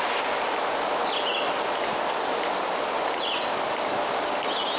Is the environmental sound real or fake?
real